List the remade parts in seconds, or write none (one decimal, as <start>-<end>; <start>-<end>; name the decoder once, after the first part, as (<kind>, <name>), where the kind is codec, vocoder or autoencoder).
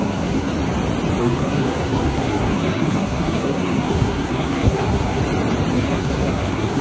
0.0-0.5 (codec, SNAC); 1.2-5.2; 5.7-6.8